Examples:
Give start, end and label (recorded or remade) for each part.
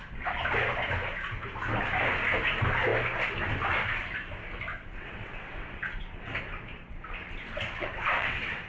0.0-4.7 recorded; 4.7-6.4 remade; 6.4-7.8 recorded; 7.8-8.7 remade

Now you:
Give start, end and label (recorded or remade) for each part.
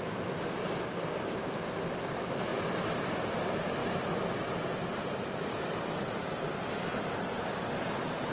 0.0-2.5 recorded; 2.5-3.1 remade; 3.1-3.8 recorded; 3.8-7.4 remade; 7.4-8.3 recorded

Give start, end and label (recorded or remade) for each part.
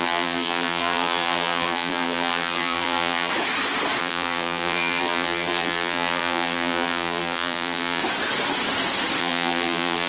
0.0-3.3 remade; 3.3-4.0 recorded; 4.0-8.0 remade; 8.0-9.2 recorded; 9.2-10.1 remade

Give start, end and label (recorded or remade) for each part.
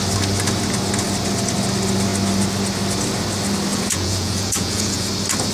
0.0-3.7 recorded; 3.7-5.1 remade; 5.1-5.5 recorded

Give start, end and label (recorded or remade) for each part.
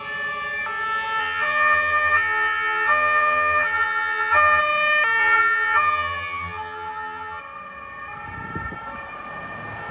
0.0-1.2 recorded; 1.2-4.6 remade; 4.6-5.2 recorded; 5.2-7.4 remade; 7.4-9.9 recorded